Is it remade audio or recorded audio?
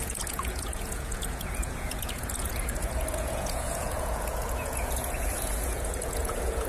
remade